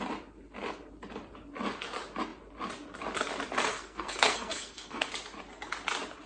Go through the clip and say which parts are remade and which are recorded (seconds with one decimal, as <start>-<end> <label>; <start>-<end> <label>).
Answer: 0.0-3.7 recorded; 3.7-5.1 remade; 5.1-6.3 recorded